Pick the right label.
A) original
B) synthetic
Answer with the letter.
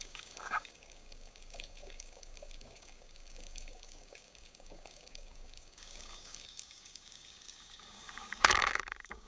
B